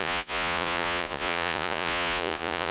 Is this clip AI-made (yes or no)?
yes